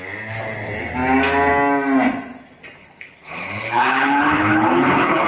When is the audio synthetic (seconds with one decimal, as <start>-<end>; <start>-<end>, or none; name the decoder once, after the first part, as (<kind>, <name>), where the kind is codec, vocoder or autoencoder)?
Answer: 2.8-5.3 (codec, HILCodec)